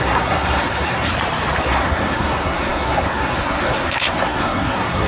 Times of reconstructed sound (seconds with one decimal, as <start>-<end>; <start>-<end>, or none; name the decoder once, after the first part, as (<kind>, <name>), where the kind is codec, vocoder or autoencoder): 0.0-1.1 (codec, SNAC); 1.6-5.1